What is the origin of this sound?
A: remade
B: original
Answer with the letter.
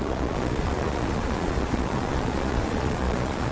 A